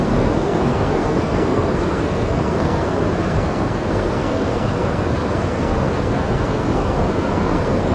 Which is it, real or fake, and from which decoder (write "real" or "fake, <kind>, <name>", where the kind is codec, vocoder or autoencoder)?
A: fake, codec, SNAC